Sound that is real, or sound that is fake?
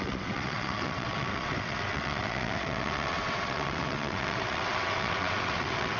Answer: fake